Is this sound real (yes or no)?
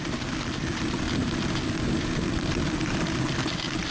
yes